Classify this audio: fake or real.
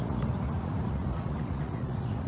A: fake